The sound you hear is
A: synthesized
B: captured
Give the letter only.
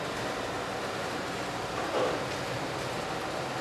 B